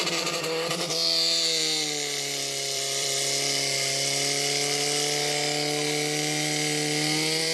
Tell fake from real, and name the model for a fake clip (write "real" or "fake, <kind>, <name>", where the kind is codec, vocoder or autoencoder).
fake, vocoder, BigVGAN v2